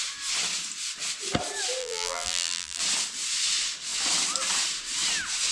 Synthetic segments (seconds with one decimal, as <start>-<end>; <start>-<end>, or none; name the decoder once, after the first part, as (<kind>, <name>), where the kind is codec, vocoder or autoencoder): 1.8-2.8 (vocoder, BigVGAN v2)